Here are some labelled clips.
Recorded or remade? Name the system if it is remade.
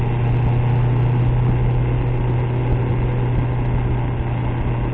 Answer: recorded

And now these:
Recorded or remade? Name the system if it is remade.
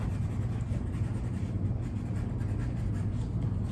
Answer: recorded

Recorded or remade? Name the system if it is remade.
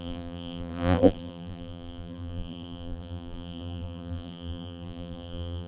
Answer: remade, vocoder, BigVGAN v2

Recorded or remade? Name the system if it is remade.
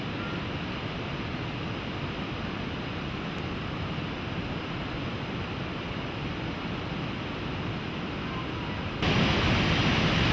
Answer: recorded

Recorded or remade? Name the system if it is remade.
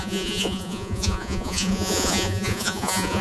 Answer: remade, vocoder, Vocos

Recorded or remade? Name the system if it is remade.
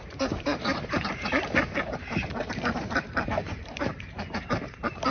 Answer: remade, vocoder, BigVGAN v2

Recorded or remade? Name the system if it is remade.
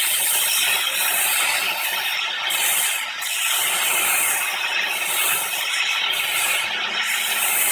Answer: recorded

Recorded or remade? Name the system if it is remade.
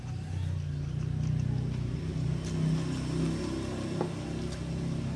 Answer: recorded